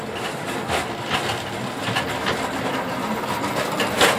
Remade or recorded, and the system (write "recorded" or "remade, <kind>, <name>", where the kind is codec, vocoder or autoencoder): recorded